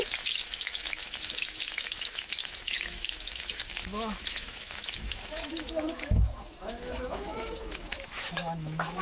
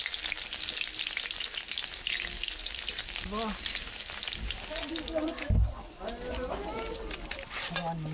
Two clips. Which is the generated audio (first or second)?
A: first